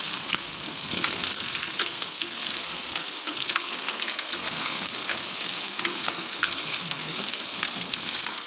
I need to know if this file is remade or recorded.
remade